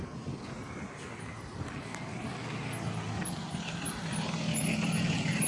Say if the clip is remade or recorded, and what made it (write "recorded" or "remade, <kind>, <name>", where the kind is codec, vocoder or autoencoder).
recorded